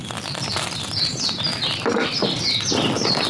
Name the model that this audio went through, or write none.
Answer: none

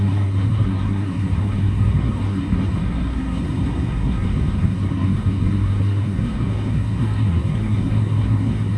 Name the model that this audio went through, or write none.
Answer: codec, SNAC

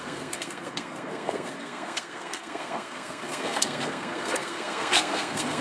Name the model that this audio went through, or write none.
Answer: codec, SNAC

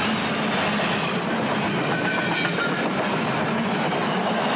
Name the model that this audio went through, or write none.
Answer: none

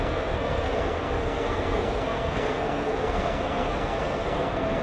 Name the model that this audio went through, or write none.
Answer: codec, SNAC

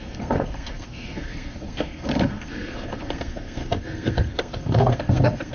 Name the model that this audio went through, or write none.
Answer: codec, SNAC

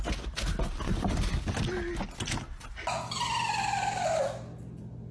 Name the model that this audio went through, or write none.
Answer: none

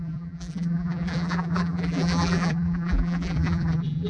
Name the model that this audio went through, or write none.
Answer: vocoder, BigVGAN v2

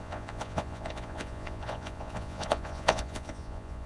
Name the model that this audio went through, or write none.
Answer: vocoder, Vocos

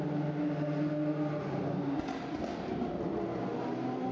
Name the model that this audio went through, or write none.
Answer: none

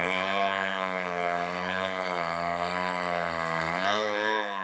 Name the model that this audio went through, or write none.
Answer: codec, SNAC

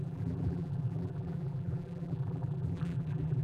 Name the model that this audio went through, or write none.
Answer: vocoder, BigVGAN v2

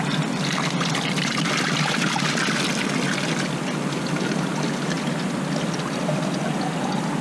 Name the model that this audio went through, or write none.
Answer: none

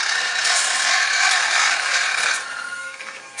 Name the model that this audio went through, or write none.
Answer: codec, SNAC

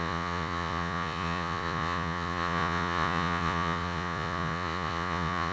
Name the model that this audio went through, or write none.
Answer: vocoder, Vocos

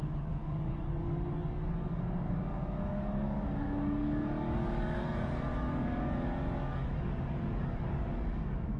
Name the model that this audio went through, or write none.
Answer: codec, DAC